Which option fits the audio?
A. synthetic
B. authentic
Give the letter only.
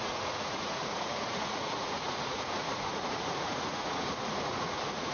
A